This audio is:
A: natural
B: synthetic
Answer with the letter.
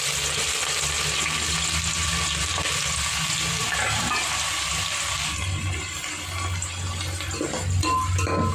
A